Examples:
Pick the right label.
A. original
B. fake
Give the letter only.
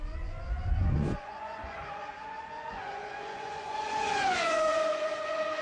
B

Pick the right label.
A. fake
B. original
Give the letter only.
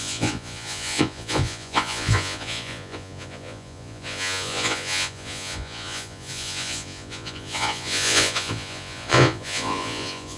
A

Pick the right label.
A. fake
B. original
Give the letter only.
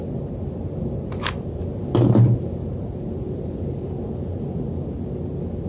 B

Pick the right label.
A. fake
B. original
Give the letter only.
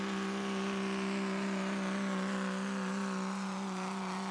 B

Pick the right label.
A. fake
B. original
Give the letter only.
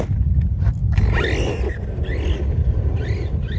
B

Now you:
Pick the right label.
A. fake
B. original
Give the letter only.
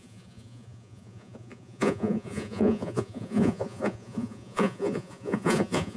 A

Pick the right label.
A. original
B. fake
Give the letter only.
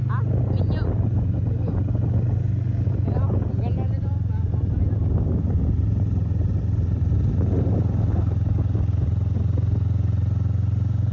A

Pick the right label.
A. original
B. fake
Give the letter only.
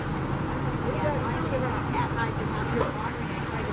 A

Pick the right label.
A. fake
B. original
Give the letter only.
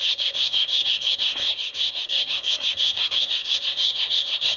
A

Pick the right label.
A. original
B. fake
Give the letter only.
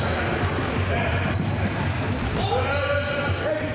A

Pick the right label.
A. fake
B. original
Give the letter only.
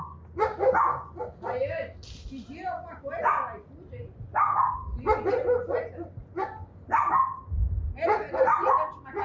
B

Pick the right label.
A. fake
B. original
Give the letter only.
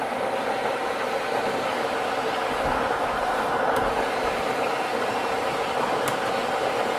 A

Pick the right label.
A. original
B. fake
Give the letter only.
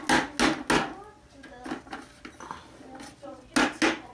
A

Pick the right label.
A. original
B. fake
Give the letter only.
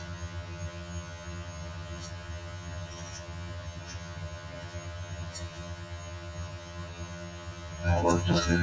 B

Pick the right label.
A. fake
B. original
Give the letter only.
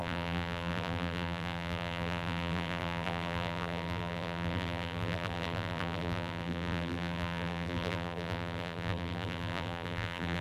A